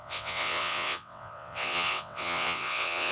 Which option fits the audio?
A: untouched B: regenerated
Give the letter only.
B